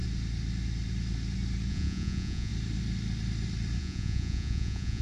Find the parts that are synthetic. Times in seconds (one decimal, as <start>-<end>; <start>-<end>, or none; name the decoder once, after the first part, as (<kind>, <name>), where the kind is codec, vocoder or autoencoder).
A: 1.7-2.5 (vocoder, Vocos); 3.8-5.0